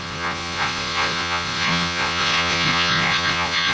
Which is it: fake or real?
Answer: fake